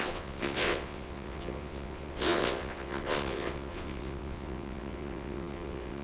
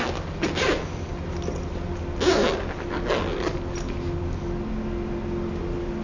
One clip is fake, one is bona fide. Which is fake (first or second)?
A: first